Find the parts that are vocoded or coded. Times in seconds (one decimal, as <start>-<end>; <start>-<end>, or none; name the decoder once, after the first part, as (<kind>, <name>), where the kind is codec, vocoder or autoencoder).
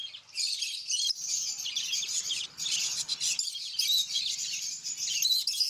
none